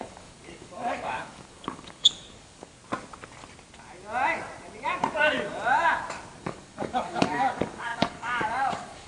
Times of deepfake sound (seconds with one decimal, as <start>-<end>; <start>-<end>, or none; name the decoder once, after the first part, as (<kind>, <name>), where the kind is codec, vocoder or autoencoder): 0.0-2.8 (codec, DAC); 6.4-9.1